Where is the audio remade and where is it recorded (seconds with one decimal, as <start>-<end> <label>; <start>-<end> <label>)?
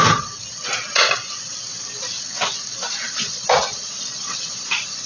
0.0-2.7 recorded; 2.7-5.1 remade